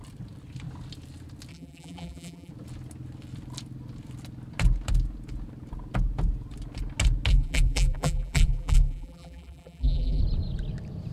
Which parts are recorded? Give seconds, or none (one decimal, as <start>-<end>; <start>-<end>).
0.0-1.5; 2.5-7.3; 10.2-11.1